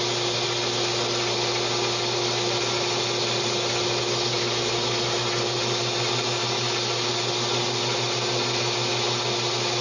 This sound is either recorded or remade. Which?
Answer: recorded